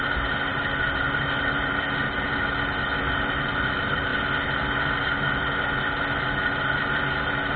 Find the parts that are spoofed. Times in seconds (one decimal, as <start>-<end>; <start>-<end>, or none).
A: none